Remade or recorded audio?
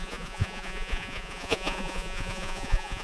remade